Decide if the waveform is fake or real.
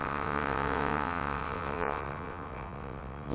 fake